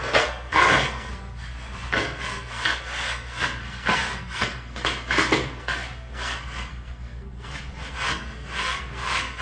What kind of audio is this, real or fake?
fake